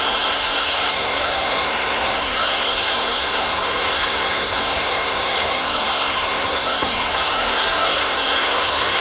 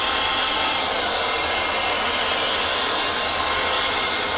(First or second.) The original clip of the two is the second